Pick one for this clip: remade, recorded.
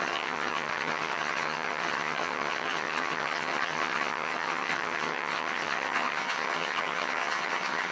remade